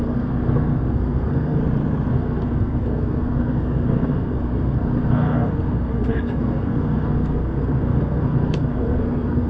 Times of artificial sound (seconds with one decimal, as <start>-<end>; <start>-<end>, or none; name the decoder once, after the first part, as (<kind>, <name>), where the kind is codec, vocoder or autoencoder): 0.0-1.6 (codec, SNAC); 2.1-9.5